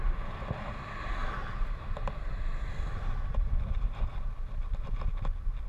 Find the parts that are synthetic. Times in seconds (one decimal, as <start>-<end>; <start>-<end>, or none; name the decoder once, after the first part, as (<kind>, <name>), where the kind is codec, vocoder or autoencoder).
1.2-2.4 (vocoder, BigVGAN v2)